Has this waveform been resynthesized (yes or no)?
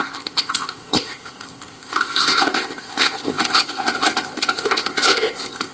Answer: yes